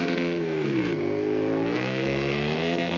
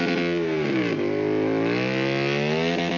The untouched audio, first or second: second